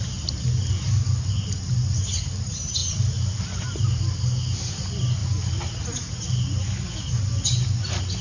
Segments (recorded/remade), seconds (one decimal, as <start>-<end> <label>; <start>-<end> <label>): 0.0-8.2 recorded

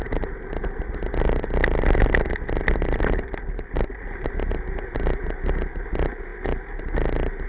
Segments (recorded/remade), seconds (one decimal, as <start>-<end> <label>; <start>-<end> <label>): 0.0-7.5 recorded

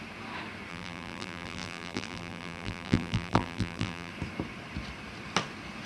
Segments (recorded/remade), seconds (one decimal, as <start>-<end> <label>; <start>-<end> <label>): 0.0-0.7 recorded; 0.7-4.1 remade; 4.1-5.9 recorded

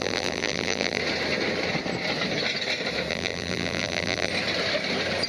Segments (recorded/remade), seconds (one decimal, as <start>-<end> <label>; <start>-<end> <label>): 0.0-1.0 remade; 1.0-3.1 recorded; 3.1-4.3 remade; 4.3-5.3 recorded